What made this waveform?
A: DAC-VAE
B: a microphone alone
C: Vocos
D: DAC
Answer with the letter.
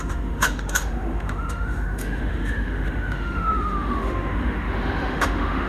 A